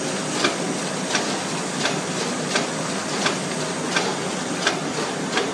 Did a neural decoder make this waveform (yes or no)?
no